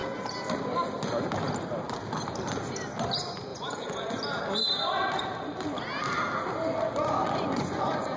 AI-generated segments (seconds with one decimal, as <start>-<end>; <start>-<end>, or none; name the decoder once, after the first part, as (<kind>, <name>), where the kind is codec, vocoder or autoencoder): 3.5-4.2 (vocoder, Vocos); 7.2-8.2